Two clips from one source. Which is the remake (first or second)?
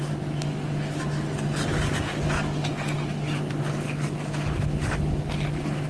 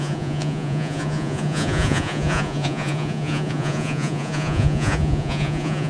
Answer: second